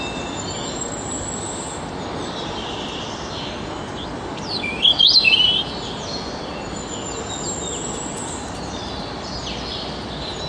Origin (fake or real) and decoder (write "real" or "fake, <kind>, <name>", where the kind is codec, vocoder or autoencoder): real